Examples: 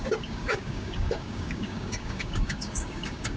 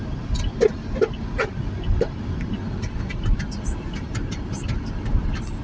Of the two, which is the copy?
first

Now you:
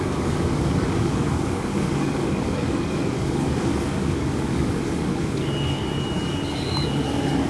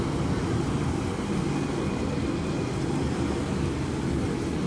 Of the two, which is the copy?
first